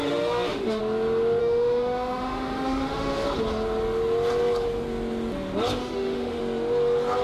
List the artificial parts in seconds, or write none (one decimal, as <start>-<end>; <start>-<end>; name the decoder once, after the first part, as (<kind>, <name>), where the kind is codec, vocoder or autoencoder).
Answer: 0.0-0.8 (autoencoder, DAC-VAE); 1.4-3.3; 5.8-6.4